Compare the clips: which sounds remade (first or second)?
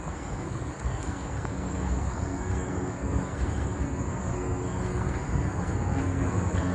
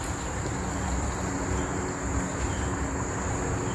first